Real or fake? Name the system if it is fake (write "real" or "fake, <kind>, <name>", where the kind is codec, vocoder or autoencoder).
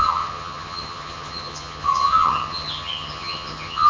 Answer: fake, vocoder, HiFi-GAN